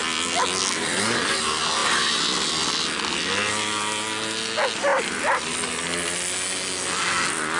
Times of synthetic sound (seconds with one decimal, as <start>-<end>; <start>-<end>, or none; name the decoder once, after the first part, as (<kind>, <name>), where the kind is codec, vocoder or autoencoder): none